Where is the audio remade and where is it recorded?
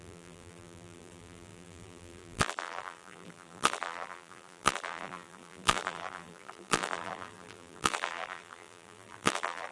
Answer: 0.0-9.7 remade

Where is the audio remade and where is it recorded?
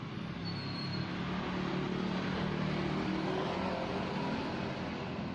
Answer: 0.0-5.3 recorded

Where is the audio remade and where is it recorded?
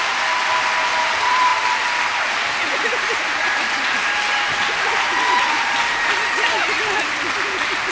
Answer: 0.0-1.5 remade; 1.5-2.3 recorded; 2.3-7.9 remade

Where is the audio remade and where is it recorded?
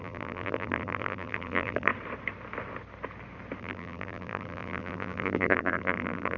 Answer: 0.0-1.9 remade; 1.9-3.6 recorded; 3.6-6.4 remade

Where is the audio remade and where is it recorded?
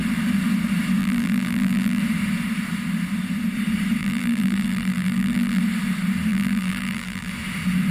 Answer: 0.0-1.0 recorded; 1.0-2.0 remade; 2.0-4.0 recorded; 4.0-5.6 remade; 5.6-6.3 recorded; 6.3-7.3 remade; 7.3-7.9 recorded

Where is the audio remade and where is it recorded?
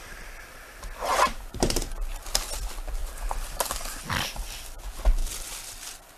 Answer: 0.0-1.1 recorded; 1.1-1.8 remade; 1.8-3.0 recorded; 3.0-4.0 remade; 4.0-6.2 recorded